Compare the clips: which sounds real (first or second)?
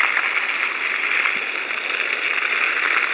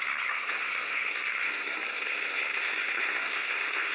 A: first